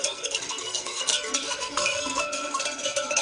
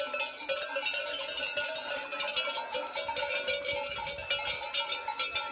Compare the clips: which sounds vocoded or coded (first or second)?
first